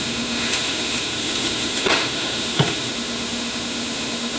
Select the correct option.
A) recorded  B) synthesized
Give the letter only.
B